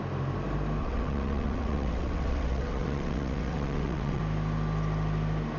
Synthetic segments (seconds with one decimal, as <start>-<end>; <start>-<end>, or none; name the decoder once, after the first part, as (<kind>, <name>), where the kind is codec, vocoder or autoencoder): 0.8-4.2 (vocoder, WaveNeXt)